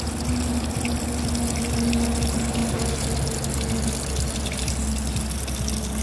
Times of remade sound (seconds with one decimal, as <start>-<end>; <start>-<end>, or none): none